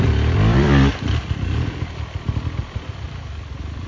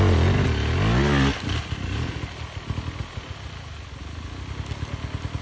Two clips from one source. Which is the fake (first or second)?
first